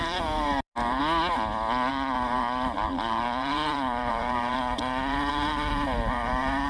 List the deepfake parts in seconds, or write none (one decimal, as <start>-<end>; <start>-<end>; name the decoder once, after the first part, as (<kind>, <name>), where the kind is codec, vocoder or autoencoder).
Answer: 0.0-1.0 (vocoder, BigVGAN v2); 1.9-6.7